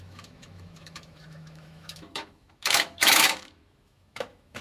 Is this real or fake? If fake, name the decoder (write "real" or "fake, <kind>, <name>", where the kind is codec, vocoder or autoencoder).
fake, autoencoder, DAC-VAE